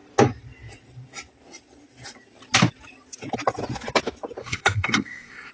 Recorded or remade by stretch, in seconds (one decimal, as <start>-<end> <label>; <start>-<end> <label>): 0.0-4.4 recorded; 4.4-5.5 remade